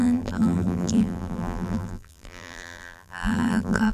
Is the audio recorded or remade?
remade